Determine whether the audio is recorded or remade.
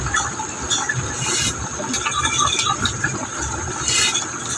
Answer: recorded